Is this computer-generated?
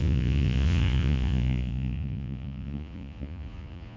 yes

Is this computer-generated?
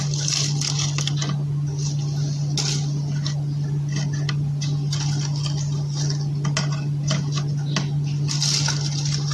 no